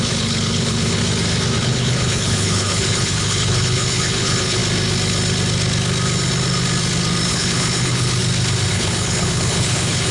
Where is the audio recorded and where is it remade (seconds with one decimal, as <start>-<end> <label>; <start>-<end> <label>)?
0.0-1.0 remade; 1.0-1.6 recorded; 1.6-4.6 remade; 4.6-7.3 recorded; 7.3-8.2 remade; 8.2-8.7 recorded; 8.7-10.1 remade